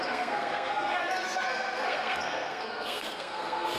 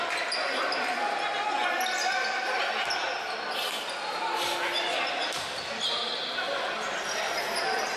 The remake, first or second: first